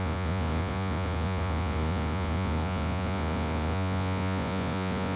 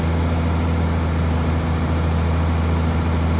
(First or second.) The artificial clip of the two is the first